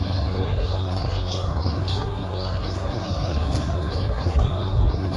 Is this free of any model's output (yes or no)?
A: no